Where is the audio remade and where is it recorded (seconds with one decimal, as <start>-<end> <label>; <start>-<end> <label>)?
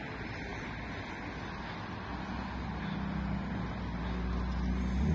0.0-5.1 recorded